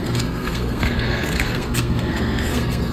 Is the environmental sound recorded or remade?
remade